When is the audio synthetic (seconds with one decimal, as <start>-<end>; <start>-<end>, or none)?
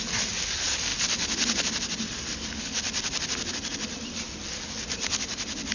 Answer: none